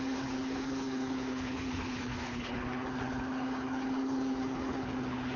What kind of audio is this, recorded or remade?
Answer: remade